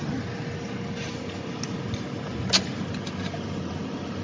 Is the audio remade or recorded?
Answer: recorded